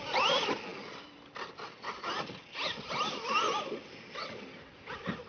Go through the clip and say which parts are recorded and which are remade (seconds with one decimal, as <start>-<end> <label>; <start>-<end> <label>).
0.0-5.3 recorded